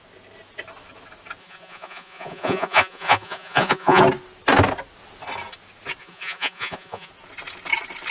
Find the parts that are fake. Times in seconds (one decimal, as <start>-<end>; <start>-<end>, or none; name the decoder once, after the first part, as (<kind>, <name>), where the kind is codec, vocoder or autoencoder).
1.4-4.0 (vocoder, Vocos); 6.0-7.1